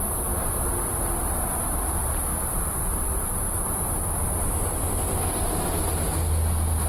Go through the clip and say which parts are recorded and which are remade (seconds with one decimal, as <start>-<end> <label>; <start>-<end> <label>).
0.0-2.3 recorded; 2.3-3.6 remade; 3.6-6.9 recorded